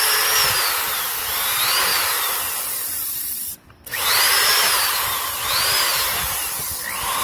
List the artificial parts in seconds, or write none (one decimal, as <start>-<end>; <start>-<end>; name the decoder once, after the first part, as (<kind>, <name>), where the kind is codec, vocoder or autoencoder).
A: 1.9-2.4 (vocoder, BigVGAN v2); 2.9-5.1; 5.9-6.6